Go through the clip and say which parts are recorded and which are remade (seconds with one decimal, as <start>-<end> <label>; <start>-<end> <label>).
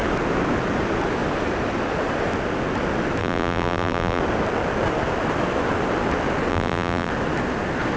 0.0-3.2 recorded; 3.2-4.2 remade; 4.2-6.5 recorded; 6.5-7.1 remade; 7.1-8.0 recorded